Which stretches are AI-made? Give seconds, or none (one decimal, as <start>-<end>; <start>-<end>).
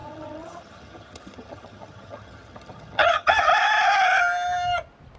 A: 0.0-3.5